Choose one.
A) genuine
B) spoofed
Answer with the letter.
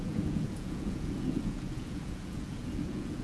B